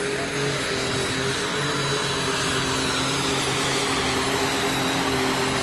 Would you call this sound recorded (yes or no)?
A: yes